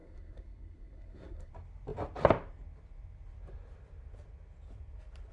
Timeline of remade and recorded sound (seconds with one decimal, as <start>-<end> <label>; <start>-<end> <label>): 0.0-1.5 remade; 1.5-5.3 recorded